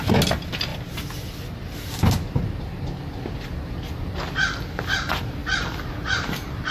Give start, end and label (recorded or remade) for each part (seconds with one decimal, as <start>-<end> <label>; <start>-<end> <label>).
0.0-5.4 recorded; 5.4-6.7 remade